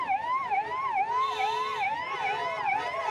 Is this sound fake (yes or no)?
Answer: no